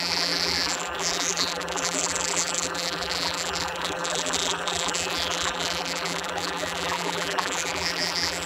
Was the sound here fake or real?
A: fake